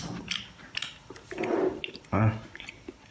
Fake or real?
real